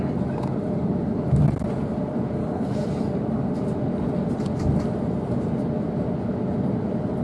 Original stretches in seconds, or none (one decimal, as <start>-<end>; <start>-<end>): 0.0-2.4; 2.9-7.2